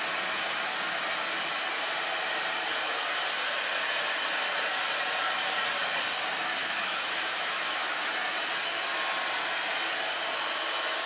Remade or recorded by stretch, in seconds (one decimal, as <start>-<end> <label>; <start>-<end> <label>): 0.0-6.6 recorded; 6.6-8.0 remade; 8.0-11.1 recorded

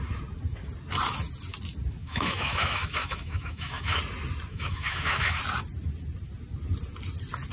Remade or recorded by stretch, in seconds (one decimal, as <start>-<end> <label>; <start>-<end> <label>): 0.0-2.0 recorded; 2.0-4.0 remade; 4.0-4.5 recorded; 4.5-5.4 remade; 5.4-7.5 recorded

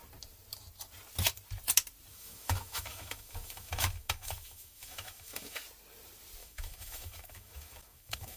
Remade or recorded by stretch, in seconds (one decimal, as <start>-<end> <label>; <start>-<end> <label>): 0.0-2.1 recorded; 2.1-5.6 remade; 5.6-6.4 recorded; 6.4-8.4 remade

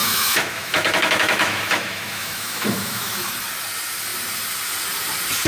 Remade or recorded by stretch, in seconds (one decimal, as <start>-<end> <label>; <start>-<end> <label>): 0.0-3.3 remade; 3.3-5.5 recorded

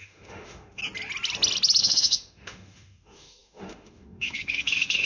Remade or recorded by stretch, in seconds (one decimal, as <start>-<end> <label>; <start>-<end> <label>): 0.0-0.8 remade; 0.8-1.8 recorded; 1.8-5.0 remade

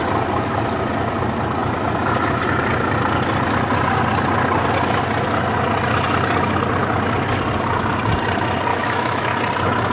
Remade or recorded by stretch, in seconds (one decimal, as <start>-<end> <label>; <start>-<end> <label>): 0.0-8.7 recorded; 8.7-9.4 remade; 9.4-9.9 recorded

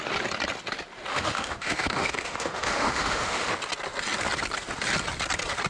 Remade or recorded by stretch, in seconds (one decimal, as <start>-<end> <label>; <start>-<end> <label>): 0.0-1.1 recorded; 1.1-3.5 remade; 3.5-5.7 recorded

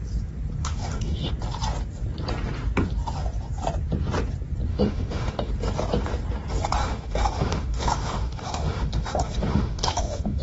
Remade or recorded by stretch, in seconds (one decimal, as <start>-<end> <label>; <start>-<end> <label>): 0.0-0.6 recorded; 0.6-1.3 remade; 1.3-4.7 recorded; 4.7-5.5 remade; 5.5-6.8 recorded; 6.8-10.4 remade